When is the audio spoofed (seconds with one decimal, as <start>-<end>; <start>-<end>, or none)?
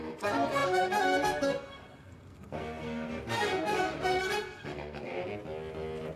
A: 0.0-5.2